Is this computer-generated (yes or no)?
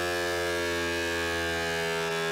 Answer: no